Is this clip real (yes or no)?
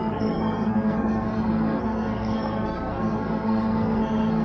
no